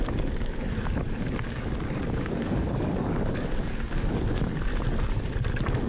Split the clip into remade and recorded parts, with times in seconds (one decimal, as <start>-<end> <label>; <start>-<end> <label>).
0.0-4.7 remade; 4.7-5.5 recorded; 5.5-5.9 remade